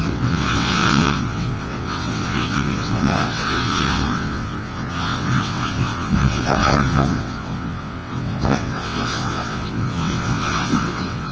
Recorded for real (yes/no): no